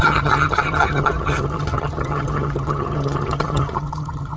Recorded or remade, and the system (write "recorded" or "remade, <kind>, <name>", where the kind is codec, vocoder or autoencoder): remade, vocoder, HiFi-GAN